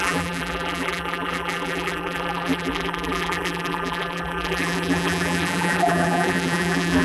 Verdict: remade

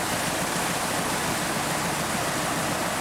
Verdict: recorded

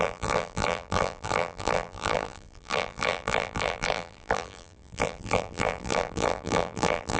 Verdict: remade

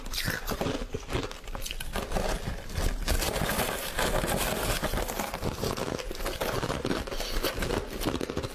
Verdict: recorded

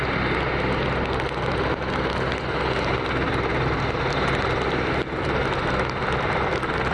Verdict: recorded